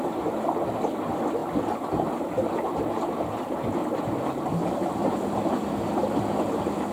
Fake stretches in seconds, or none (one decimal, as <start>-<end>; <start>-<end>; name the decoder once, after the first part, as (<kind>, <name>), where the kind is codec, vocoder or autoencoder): none